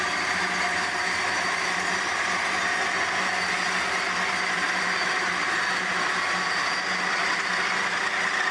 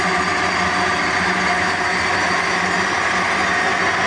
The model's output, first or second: first